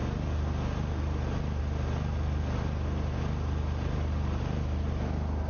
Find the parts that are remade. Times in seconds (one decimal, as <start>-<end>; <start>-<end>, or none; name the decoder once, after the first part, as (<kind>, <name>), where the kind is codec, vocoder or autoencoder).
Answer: none